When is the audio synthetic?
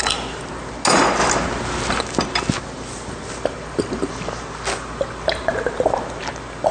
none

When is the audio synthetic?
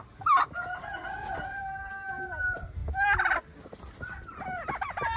none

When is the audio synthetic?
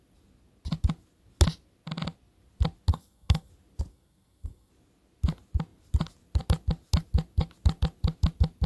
2.9-3.5 (codec, SNAC); 3.9-4.7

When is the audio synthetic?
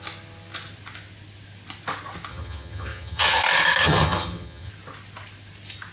2.3-3.4 (vocoder, HiFi-GAN); 3.8-4.7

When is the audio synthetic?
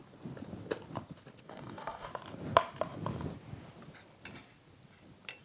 1.4-2.1 (codec, DAC)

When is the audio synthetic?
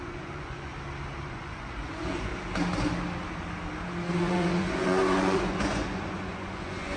0.0-0.7 (vocoder, Vocos); 1.2-2.3; 4.1-7.0